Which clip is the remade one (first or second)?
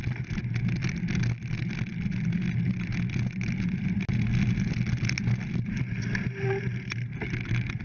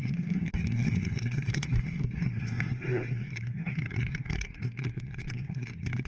second